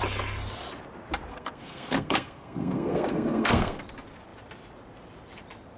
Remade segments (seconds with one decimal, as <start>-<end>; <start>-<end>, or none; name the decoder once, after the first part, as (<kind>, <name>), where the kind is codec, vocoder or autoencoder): 1.3-3.8 (codec, SNAC)